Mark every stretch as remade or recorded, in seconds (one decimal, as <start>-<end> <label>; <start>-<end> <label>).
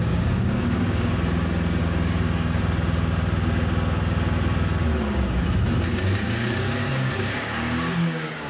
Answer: 0.0-1.1 remade; 1.1-1.8 recorded; 1.8-2.6 remade; 2.6-5.9 recorded; 5.9-8.5 remade